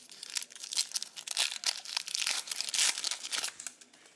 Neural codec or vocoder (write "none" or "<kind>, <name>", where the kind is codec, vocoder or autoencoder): none